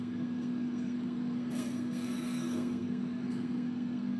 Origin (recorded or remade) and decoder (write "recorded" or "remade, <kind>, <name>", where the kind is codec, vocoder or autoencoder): remade, codec, SNAC